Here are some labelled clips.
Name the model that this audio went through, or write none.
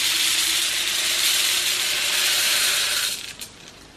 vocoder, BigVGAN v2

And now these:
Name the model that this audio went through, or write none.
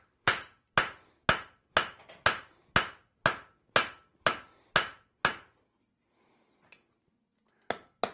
none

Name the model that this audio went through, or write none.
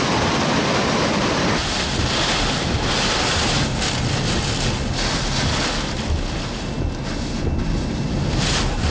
none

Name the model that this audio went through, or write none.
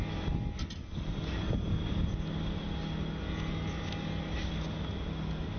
none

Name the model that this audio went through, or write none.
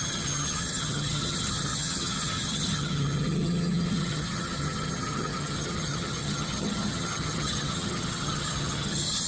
vocoder, HiFi-GAN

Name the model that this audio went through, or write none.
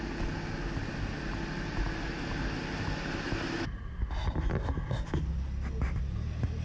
none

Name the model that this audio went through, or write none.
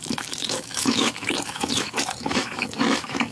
autoencoder, DAC-VAE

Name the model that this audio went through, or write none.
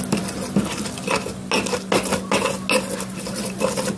none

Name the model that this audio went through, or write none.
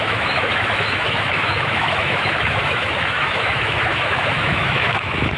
autoencoder, DAC-VAE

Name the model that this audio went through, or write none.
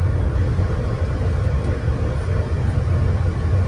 none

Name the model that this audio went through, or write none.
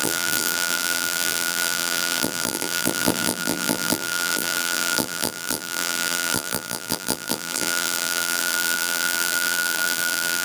vocoder, BigVGAN v2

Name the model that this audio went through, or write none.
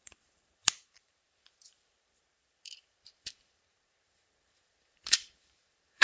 vocoder, BigVGAN v2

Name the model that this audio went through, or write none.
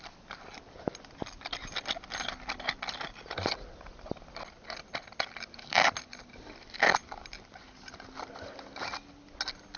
none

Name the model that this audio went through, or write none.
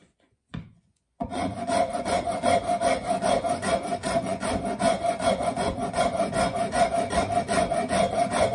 vocoder, Vocos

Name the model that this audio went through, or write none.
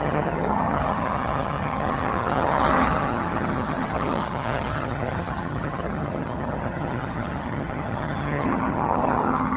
vocoder, HiFi-GAN